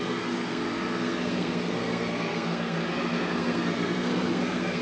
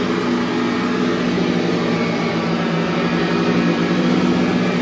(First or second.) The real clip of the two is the second